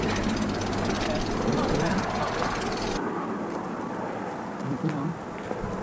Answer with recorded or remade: recorded